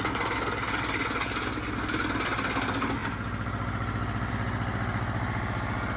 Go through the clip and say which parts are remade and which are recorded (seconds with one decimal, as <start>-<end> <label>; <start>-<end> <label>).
0.0-6.0 recorded